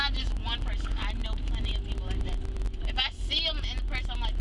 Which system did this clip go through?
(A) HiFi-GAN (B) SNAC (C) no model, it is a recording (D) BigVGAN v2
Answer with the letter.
C